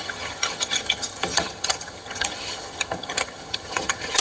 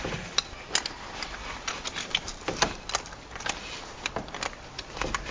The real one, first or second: second